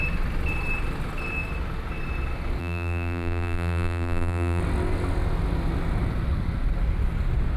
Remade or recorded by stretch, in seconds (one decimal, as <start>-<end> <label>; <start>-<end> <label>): 0.0-2.6 recorded; 2.6-4.6 remade; 4.6-7.6 recorded